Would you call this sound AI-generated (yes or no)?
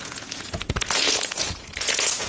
yes